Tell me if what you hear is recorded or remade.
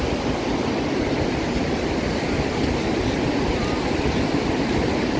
recorded